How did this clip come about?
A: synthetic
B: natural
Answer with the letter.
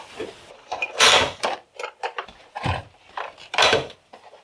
A